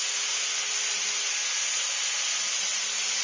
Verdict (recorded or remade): recorded